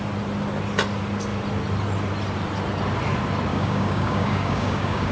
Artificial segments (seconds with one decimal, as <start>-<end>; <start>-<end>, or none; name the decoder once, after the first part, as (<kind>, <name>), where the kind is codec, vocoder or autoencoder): 3.5-5.1 (codec, DAC)